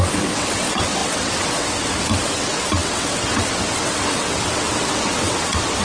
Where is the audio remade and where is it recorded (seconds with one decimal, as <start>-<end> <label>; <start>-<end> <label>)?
0.0-5.8 remade